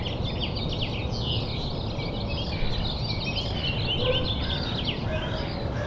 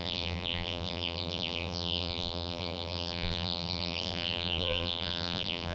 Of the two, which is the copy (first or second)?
second